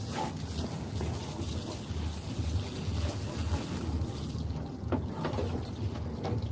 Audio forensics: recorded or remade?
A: recorded